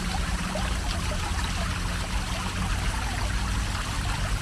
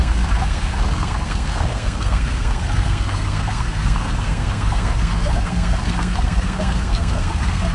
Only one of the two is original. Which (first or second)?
first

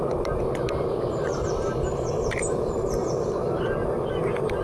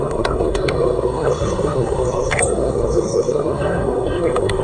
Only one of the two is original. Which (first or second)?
first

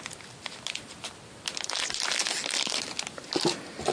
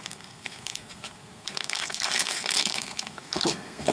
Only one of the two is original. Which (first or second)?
first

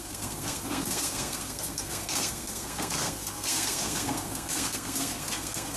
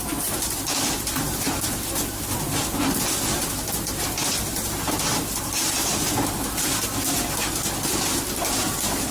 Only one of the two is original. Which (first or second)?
second